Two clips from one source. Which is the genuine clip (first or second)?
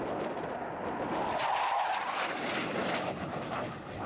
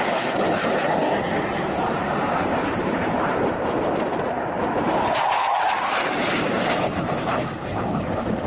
first